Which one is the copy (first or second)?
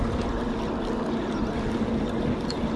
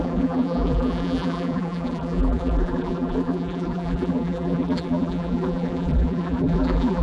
second